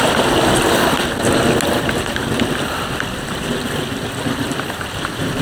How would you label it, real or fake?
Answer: real